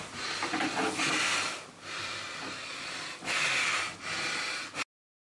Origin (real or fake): real